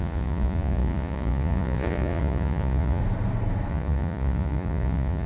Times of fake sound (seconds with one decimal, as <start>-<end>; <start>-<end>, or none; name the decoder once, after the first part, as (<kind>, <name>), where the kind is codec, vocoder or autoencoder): 0.0-3.0 (vocoder, Vocos); 3.7-5.3